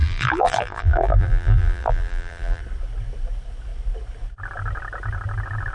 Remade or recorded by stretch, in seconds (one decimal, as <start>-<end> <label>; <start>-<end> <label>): 0.0-2.6 remade; 2.6-5.7 recorded